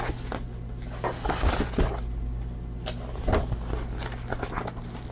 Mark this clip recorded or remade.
recorded